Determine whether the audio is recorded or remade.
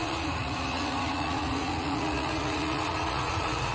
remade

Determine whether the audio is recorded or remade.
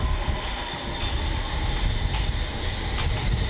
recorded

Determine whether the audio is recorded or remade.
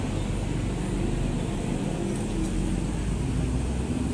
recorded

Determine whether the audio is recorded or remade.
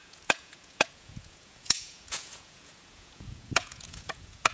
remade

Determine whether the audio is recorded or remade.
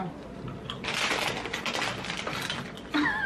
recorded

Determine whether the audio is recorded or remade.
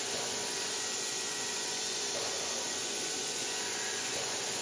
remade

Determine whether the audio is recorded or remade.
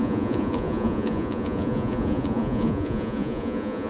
remade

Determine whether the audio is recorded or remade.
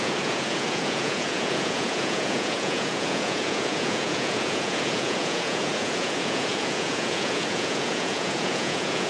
remade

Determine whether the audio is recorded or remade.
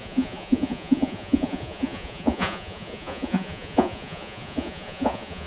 remade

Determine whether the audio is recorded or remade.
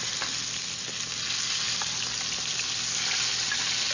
recorded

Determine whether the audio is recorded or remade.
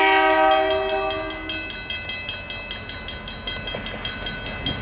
recorded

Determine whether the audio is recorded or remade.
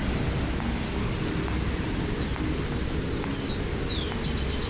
recorded